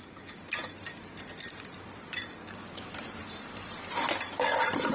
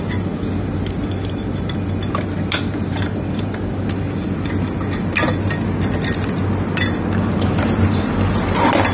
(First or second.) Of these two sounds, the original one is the second